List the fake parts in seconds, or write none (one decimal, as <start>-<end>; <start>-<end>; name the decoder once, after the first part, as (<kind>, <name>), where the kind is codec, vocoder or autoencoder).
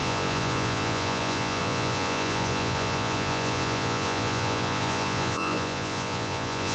0.0-6.7 (vocoder, Vocos)